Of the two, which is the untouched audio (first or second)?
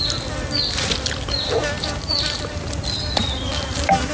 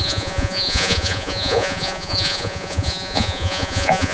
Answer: first